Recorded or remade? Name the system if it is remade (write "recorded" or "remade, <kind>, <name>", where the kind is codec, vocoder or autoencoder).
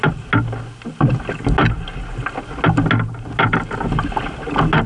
recorded